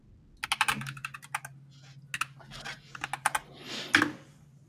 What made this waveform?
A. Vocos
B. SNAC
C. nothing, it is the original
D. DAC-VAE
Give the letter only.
C